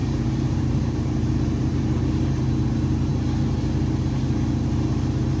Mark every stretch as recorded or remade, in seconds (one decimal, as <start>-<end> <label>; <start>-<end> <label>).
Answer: 0.0-2.4 remade; 2.4-5.4 recorded